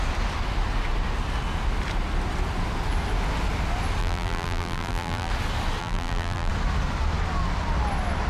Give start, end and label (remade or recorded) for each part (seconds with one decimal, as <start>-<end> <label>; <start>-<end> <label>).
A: 0.0-4.0 recorded; 4.0-5.3 remade; 5.3-5.8 recorded; 5.8-6.5 remade; 6.5-8.3 recorded